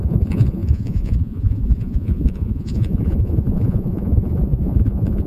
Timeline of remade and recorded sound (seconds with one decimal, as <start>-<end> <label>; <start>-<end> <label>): 0.0-5.3 remade